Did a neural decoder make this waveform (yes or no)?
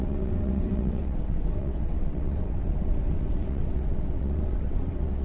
yes